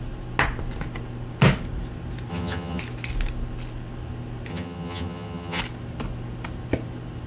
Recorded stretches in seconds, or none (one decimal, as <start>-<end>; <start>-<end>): 0.0-2.3; 2.8-4.5; 5.6-7.3